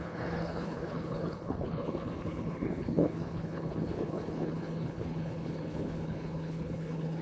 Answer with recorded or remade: remade